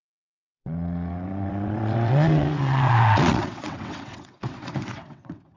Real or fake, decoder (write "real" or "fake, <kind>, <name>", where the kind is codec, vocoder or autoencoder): fake, vocoder, WaveNeXt